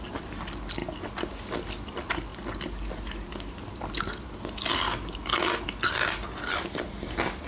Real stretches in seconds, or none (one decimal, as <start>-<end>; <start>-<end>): 0.0-7.5